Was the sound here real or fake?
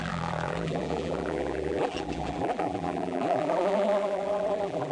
fake